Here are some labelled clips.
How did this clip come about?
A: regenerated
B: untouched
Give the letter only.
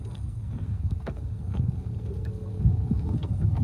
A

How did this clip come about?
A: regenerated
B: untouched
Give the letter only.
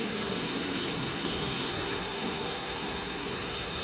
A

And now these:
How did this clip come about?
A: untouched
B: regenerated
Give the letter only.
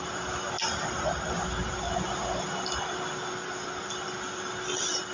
A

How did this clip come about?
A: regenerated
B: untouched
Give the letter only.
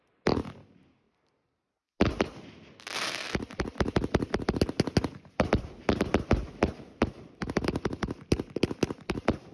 B